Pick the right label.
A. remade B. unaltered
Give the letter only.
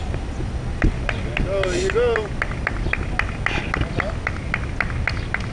B